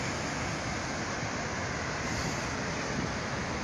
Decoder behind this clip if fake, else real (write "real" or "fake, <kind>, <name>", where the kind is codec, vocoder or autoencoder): real